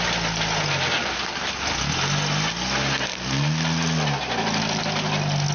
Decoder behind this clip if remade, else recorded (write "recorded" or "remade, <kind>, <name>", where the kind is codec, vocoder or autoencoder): recorded